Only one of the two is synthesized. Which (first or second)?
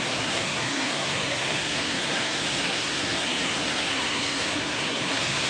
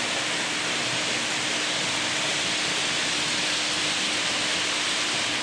first